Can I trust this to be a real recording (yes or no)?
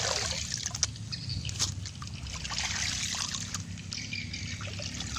yes